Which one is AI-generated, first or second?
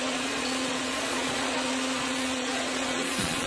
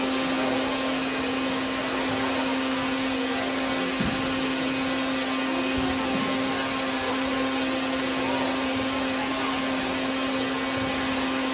first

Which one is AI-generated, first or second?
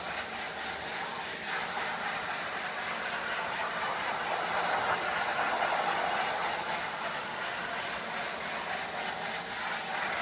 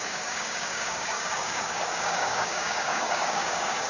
second